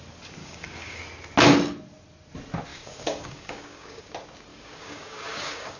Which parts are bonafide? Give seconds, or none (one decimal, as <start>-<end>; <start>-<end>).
0.0-0.4; 1.0-2.7; 4.1-4.5